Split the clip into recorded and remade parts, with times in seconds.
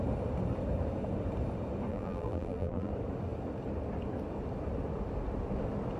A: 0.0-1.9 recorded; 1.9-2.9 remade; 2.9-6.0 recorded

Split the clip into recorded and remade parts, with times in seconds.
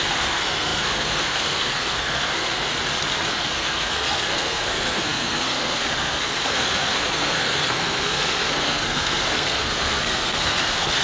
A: 0.0-2.7 remade; 2.7-3.3 recorded; 3.3-11.0 remade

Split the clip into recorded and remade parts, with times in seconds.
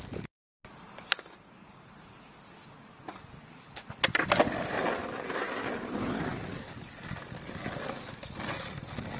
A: 0.0-9.2 recorded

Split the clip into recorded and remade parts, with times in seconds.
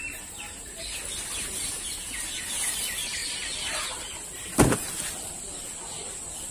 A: 0.0-6.5 recorded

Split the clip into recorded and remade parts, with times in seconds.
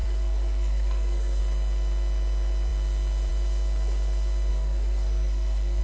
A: 0.0-1.4 remade; 1.4-4.5 recorded; 4.5-5.8 remade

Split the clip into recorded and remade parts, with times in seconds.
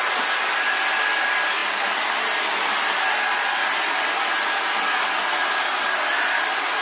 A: 0.0-6.8 recorded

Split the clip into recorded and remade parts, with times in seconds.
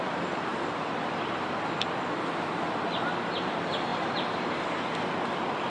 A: 0.0-5.7 recorded